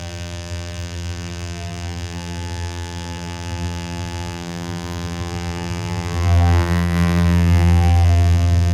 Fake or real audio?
fake